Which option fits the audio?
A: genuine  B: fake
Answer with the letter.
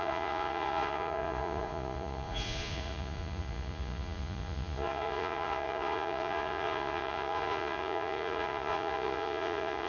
B